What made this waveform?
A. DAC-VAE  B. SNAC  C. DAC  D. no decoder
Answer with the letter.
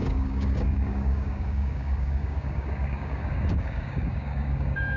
C